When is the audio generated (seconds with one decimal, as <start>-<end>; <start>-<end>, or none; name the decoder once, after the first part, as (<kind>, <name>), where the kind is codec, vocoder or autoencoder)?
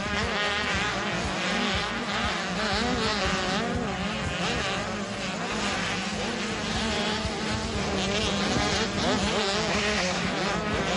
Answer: 9.7-10.3 (codec, SNAC)